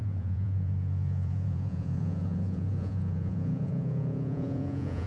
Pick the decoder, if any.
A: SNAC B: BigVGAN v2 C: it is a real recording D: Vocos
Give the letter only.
D